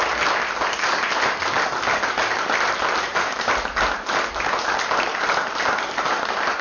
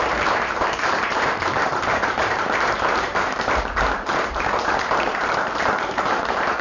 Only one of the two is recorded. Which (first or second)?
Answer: first